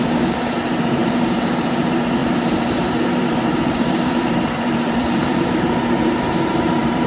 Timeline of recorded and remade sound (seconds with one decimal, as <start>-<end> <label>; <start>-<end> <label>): 0.0-7.1 remade